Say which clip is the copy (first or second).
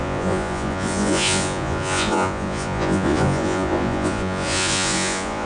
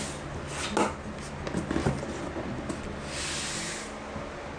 first